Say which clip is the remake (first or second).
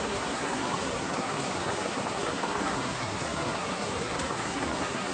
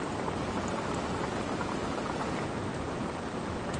first